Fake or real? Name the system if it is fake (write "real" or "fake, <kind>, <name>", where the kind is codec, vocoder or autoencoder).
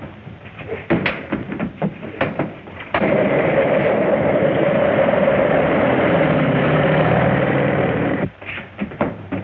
fake, vocoder, BigVGAN v2